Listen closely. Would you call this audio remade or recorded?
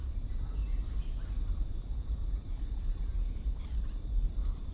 remade